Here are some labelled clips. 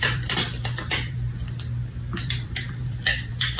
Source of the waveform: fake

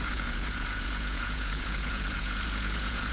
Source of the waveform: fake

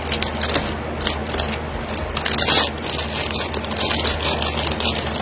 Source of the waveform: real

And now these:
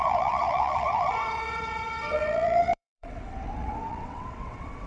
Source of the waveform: fake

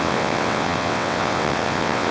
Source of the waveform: fake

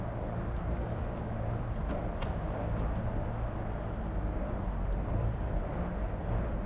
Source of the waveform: real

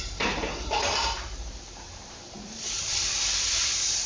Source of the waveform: fake